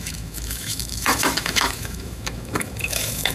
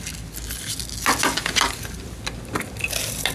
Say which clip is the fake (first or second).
first